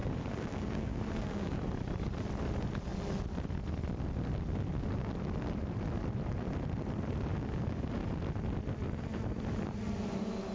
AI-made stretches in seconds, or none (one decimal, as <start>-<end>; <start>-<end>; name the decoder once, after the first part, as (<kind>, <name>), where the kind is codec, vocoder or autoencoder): 0.0-1.6 (codec, DAC); 7.3-7.9